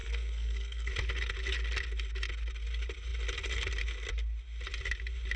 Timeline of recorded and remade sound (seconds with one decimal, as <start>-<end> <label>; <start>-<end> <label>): 0.0-0.9 remade; 0.9-5.4 recorded